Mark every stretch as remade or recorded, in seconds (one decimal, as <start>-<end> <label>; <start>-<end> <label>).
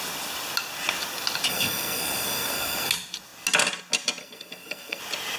0.0-1.5 recorded; 1.5-2.9 remade; 2.9-4.2 recorded; 4.2-5.0 remade; 5.0-5.4 recorded